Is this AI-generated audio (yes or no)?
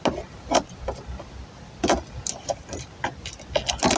no